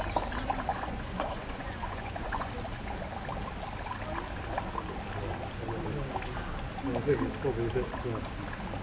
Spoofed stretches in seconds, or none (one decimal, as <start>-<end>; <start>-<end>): 0.7-2.5